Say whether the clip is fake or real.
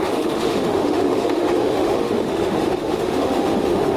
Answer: fake